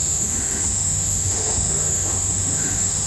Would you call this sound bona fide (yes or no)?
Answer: no